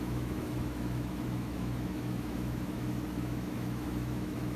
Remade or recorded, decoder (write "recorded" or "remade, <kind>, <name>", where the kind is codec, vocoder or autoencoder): remade, autoencoder, DAC-VAE